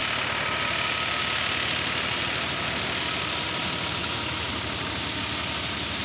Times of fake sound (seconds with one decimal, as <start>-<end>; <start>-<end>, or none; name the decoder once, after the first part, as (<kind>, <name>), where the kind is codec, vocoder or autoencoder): 4.0-4.5 (autoencoder, DAC-VAE)